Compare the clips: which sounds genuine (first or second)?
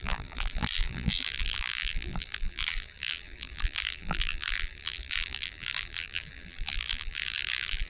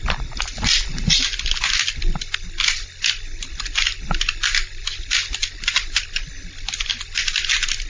second